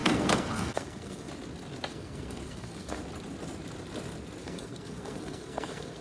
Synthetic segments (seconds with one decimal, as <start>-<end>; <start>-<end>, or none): 0.0-1.3; 1.9-3.0; 4.4-6.0